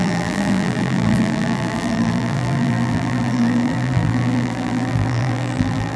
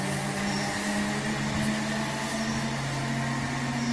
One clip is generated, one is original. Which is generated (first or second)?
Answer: first